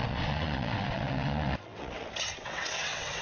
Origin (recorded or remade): remade